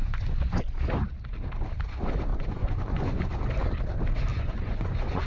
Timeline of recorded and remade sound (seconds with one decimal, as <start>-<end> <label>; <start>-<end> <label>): 0.0-0.6 remade; 0.6-2.3 recorded; 2.3-3.2 remade; 3.2-4.3 recorded; 4.3-5.3 remade